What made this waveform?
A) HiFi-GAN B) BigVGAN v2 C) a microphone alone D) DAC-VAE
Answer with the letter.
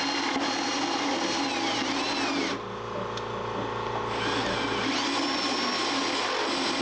C